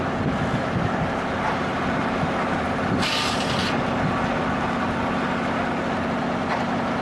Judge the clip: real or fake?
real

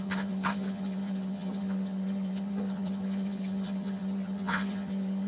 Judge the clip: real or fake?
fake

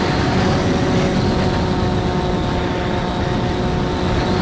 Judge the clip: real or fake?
real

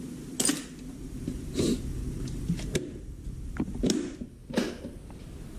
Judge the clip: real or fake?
real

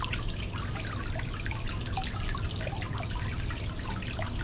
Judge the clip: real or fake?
real